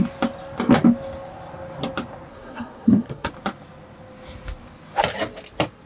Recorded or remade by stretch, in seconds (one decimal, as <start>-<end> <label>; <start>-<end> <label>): 0.0-2.3 recorded; 2.3-3.3 remade; 3.3-5.9 recorded